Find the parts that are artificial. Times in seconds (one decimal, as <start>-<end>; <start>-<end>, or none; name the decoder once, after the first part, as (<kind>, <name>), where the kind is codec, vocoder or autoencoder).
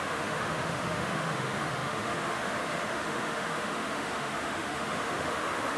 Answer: 0.0-5.8 (autoencoder, DAC-VAE)